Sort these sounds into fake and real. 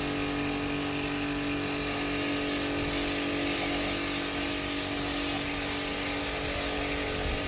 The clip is real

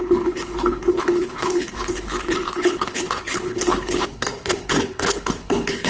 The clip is fake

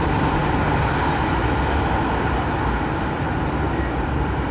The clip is real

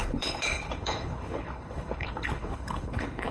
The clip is fake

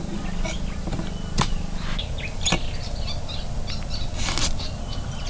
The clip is real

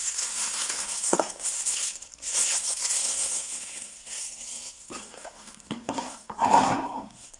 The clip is fake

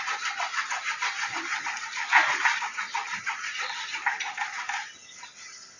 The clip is real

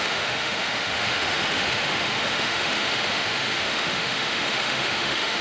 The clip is fake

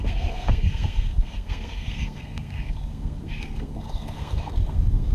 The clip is fake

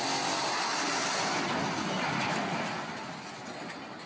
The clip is real